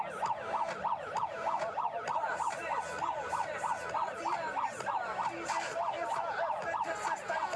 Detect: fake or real real